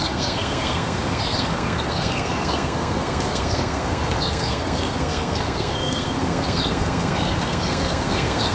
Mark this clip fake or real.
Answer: fake